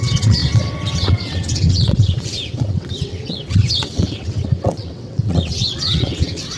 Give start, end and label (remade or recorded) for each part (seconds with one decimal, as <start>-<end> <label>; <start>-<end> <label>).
0.0-6.6 remade